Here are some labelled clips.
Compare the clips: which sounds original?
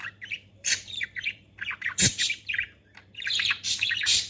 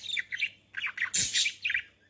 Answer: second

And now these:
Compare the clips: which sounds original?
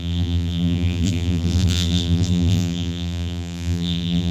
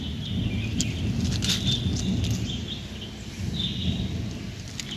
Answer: second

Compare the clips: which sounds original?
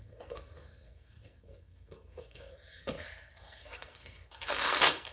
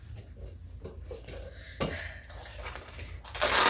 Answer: second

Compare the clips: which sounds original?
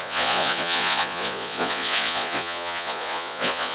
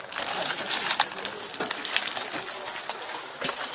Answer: second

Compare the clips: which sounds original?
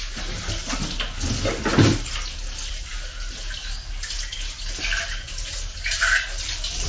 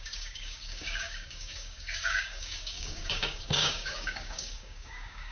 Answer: first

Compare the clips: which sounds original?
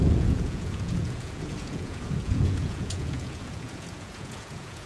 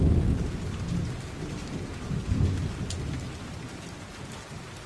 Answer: second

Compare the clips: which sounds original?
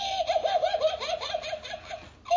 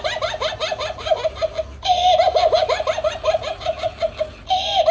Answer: second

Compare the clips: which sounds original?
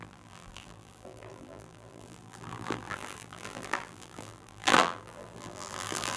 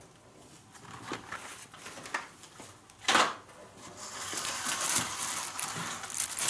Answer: second